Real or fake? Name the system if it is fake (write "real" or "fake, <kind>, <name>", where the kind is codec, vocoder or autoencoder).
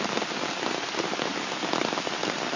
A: real